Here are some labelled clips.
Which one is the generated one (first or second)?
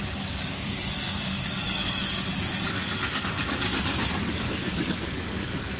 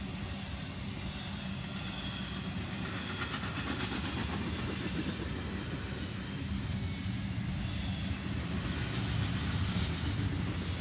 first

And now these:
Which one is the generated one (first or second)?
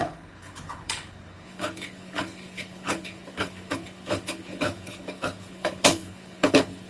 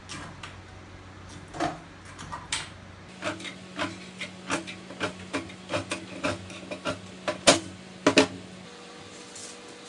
first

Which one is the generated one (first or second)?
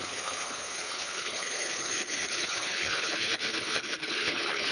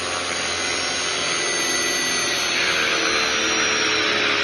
first